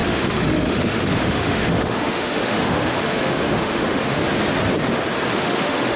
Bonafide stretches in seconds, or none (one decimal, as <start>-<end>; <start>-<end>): 4.2-5.3

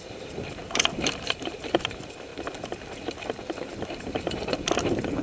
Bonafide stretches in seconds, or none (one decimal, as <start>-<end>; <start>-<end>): 2.3-3.6

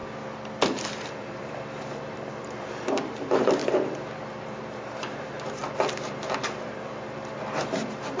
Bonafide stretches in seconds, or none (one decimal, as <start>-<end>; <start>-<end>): 0.0-0.9; 3.6-4.4; 5.6-6.4

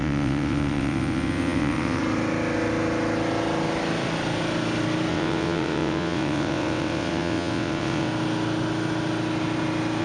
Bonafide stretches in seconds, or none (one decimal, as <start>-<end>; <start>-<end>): 2.0-5.1; 8.1-10.0

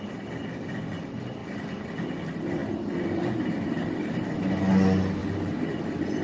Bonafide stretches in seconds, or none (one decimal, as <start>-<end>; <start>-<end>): 0.0-5.2

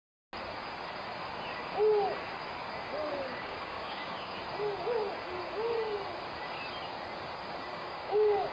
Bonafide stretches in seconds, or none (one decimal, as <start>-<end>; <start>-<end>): 0.0-3.3; 4.4-7.7

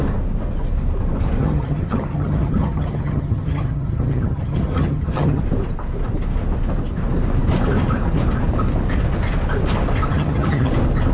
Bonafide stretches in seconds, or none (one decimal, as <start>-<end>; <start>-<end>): 0.0-1.4; 5.4-10.1; 10.7-11.1